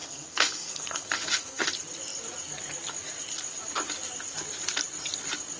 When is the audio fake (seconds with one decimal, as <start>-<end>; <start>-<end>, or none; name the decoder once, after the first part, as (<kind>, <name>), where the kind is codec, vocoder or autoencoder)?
0.0-1.6 (codec, SNAC)